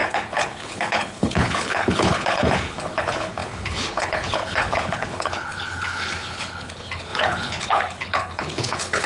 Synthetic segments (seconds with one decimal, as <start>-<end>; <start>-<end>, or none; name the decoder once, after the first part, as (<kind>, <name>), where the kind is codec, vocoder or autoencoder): 0.0-9.1 (codec, HILCodec)